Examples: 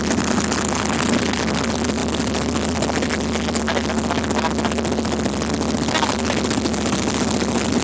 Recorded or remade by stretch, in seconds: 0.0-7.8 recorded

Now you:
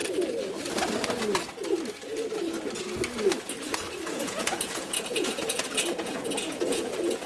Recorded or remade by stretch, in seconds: 0.0-4.1 recorded; 4.1-7.3 remade

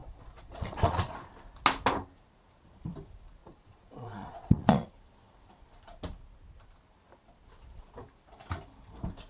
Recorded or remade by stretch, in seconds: 0.0-1.2 remade; 1.2-3.4 recorded; 3.4-4.9 remade; 4.9-9.3 recorded

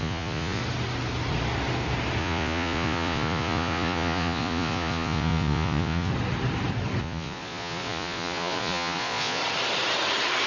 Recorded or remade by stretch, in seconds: 0.0-0.6 remade; 0.6-2.2 recorded; 2.2-6.1 remade; 6.1-7.0 recorded; 7.0-9.4 remade; 9.4-10.5 recorded

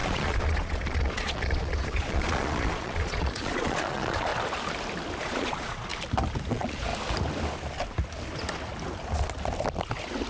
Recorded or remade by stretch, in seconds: 0.0-4.3 remade; 4.3-5.2 recorded; 5.2-5.9 remade; 5.9-6.5 recorded; 6.5-6.9 remade; 6.9-10.3 recorded